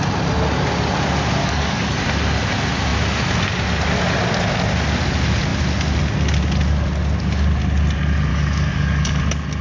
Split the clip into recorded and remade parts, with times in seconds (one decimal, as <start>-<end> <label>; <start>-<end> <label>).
0.0-1.4 recorded; 1.4-2.0 remade; 2.0-8.3 recorded; 8.3-9.2 remade; 9.2-9.6 recorded